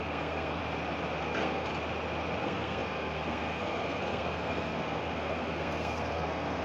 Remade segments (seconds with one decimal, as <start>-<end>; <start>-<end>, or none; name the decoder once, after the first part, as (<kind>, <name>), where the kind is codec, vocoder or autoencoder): 0.0-0.6 (codec, SNAC); 1.2-1.7; 2.4-6.6